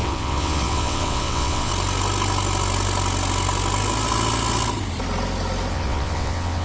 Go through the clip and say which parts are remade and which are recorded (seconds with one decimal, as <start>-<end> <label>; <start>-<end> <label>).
0.0-1.7 remade; 1.7-5.7 recorded; 5.7-6.6 remade